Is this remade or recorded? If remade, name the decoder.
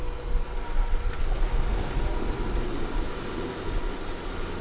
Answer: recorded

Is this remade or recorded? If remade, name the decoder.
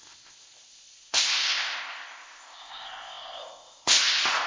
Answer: remade, codec, ZipCodec